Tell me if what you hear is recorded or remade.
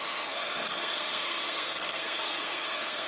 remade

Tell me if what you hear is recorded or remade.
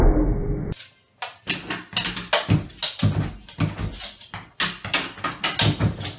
recorded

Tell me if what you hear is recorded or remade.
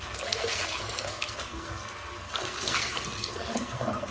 remade